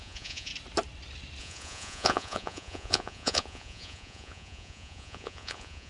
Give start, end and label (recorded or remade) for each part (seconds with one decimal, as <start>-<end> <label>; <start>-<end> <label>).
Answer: 0.0-0.5 remade; 0.5-1.4 recorded; 1.4-5.9 remade